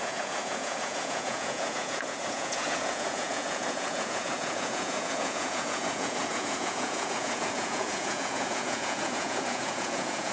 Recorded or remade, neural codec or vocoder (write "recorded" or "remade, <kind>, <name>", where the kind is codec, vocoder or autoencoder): remade, vocoder, Vocos